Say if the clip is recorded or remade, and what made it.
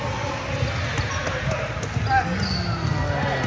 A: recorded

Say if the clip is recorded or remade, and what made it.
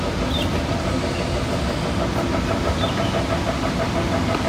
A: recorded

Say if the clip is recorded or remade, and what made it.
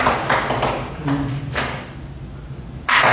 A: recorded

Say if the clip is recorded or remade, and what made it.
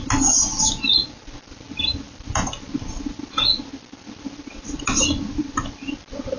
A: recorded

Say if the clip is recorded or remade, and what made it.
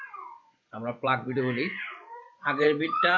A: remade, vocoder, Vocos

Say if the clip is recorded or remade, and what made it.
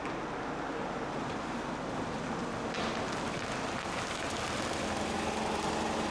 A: recorded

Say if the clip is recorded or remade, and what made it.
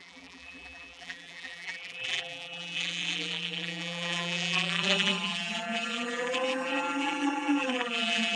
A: remade, vocoder, BigVGAN v2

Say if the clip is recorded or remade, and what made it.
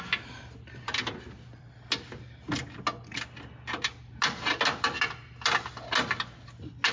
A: recorded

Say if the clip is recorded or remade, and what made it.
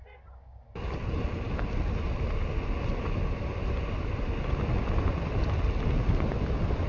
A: recorded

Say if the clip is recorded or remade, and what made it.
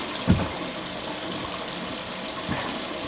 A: recorded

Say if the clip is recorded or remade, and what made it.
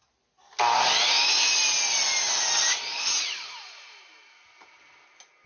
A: recorded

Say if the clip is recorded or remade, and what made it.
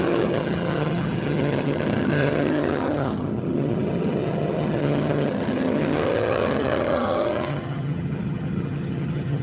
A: remade, vocoder, HiFi-GAN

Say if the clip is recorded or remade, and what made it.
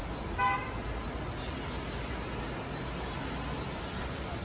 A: recorded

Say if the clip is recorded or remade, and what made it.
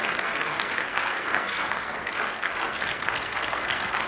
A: remade, codec, SNAC